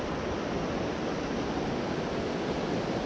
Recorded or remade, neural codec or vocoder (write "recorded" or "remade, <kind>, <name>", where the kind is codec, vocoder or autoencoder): recorded